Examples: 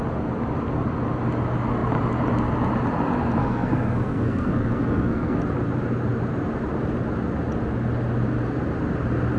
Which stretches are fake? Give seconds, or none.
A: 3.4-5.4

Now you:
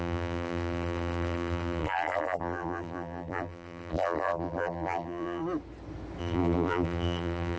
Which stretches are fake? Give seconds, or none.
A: 0.0-5.4; 6.2-7.6

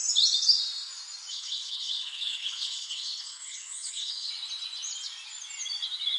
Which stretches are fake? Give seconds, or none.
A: 1.3-4.3